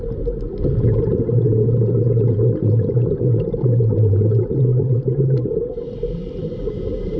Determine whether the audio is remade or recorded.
remade